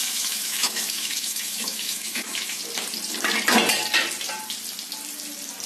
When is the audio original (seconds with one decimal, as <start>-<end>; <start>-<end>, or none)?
2.6-5.7

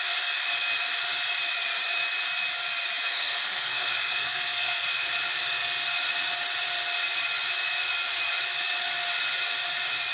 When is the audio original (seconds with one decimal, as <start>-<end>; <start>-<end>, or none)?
0.0-3.1; 4.8-10.1

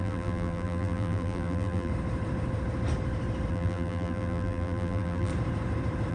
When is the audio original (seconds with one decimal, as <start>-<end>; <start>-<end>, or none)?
1.9-3.5; 5.3-6.1

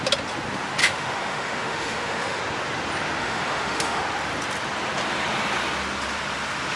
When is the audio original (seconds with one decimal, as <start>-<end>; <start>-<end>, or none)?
0.0-0.8; 2.4-3.2; 4.0-6.8

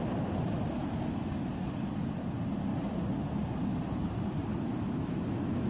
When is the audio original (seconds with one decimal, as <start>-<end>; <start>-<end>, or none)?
0.0-0.8; 1.5-4.5

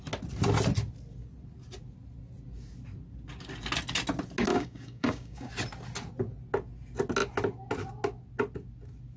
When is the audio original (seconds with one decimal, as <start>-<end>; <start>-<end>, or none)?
0.0-4.5; 5.5-9.2